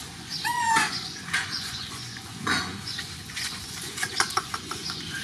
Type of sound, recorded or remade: remade